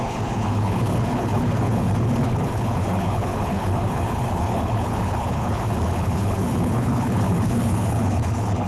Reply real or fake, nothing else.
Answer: fake